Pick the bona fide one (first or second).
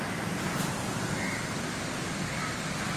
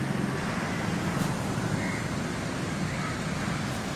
second